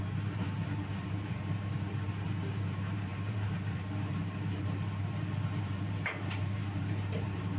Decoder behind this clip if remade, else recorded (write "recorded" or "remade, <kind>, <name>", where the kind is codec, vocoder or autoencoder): remade, vocoder, BigVGAN v2